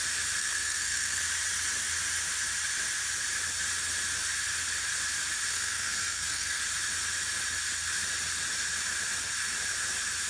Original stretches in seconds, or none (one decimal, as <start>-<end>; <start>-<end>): 0.0-0.4; 1.2-5.5; 6.6-10.3